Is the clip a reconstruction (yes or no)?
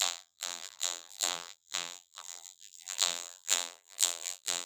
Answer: yes